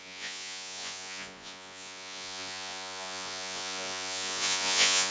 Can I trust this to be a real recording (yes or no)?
no